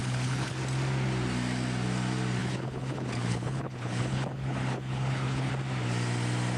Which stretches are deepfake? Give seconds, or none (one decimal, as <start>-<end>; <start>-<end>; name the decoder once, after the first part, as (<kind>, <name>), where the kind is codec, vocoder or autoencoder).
0.0-0.5 (codec, HILCodec); 2.4-5.5